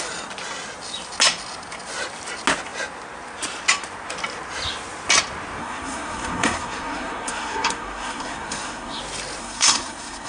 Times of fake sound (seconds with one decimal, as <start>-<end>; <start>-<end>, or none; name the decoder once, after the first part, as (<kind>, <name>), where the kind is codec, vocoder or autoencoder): 5.6-9.0 (codec, SNAC); 9.4-10.3